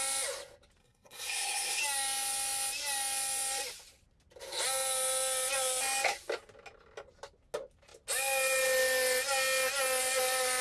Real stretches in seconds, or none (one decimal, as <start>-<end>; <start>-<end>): 0.0-0.8; 1.8-10.6